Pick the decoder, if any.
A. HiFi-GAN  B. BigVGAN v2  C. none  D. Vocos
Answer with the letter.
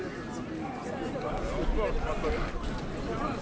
C